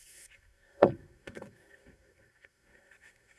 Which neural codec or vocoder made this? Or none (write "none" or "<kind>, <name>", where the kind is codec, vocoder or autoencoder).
codec, SNAC